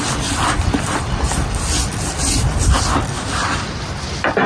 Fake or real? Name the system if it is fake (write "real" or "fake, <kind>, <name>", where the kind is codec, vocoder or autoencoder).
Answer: real